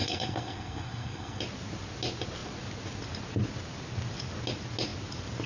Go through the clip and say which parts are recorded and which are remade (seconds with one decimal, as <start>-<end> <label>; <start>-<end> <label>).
0.0-1.4 remade; 1.4-5.5 recorded